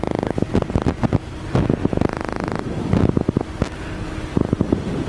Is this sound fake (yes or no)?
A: no